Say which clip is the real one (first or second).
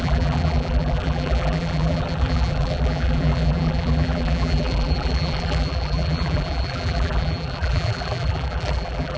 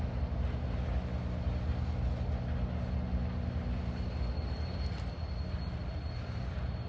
second